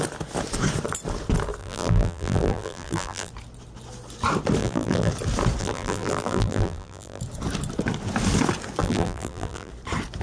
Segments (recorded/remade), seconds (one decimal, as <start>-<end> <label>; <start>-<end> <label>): 0.0-1.6 recorded; 1.6-3.3 remade; 3.3-4.6 recorded; 4.6-5.1 remade; 5.1-5.6 recorded; 5.6-7.2 remade; 7.2-8.8 recorded; 8.8-9.7 remade; 9.7-10.2 recorded